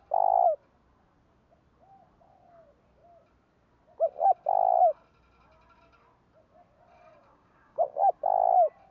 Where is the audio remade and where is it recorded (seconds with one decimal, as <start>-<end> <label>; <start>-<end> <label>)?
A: 0.0-7.2 recorded; 7.2-8.2 remade; 8.2-8.9 recorded